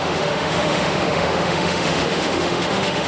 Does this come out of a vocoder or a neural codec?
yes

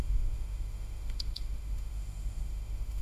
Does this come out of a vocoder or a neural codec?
yes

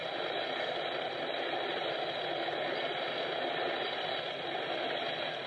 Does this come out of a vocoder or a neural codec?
no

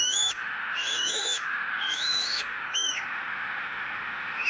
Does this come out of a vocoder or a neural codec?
yes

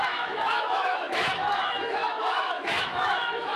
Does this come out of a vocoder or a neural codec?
yes